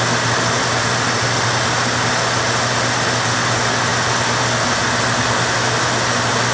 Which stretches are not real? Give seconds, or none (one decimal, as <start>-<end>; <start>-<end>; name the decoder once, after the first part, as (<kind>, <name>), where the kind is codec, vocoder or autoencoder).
none